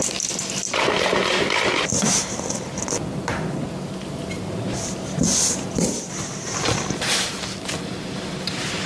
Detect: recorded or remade recorded